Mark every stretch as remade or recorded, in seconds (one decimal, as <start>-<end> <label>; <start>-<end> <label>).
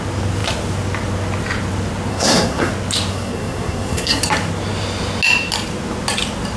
0.0-2.1 recorded; 2.1-2.7 remade; 2.7-3.1 recorded; 3.1-4.2 remade; 4.2-6.6 recorded